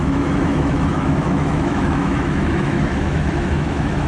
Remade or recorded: remade